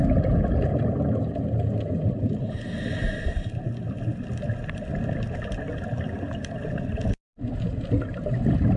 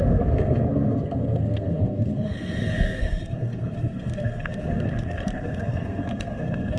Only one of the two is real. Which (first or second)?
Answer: first